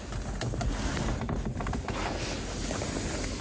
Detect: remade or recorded recorded